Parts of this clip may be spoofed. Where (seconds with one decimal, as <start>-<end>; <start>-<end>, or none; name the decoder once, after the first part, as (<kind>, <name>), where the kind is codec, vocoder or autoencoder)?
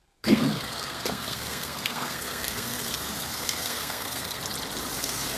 0.0-4.4 (codec, SNAC); 5.0-5.4